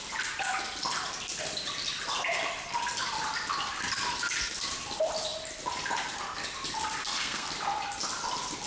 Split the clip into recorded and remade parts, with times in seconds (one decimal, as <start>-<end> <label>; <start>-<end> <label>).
0.0-7.0 recorded; 7.0-7.5 remade; 7.5-8.7 recorded